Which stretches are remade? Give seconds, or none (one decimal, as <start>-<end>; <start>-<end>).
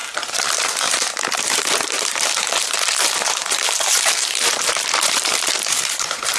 0.0-6.4